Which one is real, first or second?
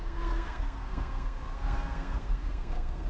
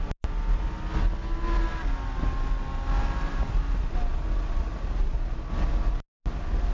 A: second